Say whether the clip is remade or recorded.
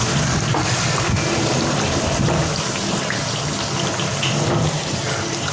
recorded